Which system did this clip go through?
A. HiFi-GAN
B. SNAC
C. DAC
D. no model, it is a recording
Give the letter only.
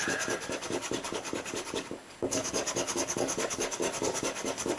C